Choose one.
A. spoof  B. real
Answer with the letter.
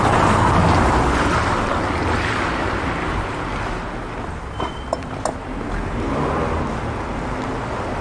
B